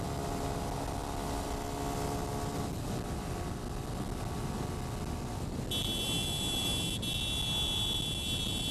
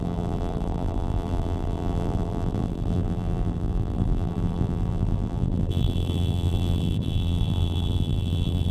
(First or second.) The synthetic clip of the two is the second